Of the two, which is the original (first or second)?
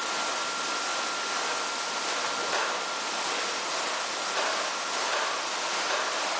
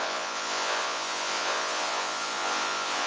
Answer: first